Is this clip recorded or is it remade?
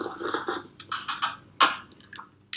recorded